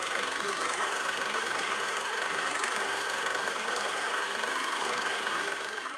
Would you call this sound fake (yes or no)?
yes